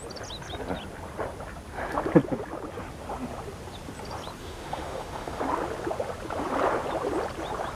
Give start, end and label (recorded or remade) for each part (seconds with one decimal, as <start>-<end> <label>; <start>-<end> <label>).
0.0-4.4 recorded; 4.4-5.4 remade; 5.4-7.7 recorded